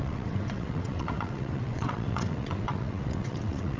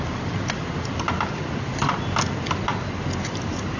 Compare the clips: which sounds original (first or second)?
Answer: second